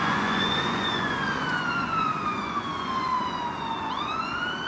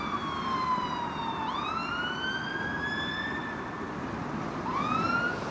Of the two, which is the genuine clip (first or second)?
second